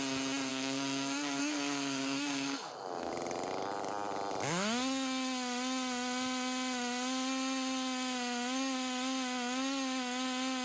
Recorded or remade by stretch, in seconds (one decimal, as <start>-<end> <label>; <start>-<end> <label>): 0.0-0.5 recorded; 0.5-3.1 remade; 3.1-10.6 recorded